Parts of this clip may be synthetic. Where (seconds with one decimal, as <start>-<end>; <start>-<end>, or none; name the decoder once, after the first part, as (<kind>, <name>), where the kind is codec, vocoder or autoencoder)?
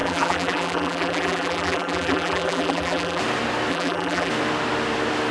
0.0-3.2 (vocoder, BigVGAN v2); 3.7-4.3